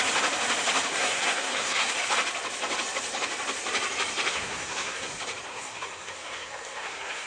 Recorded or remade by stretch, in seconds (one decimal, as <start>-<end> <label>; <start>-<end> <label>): 0.0-0.9 recorded; 0.9-1.9 remade; 1.9-4.3 recorded; 4.3-5.1 remade; 5.1-5.5 recorded; 5.5-7.3 remade